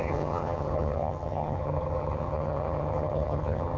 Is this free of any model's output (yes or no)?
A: no